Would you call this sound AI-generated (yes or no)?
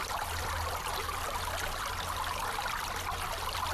no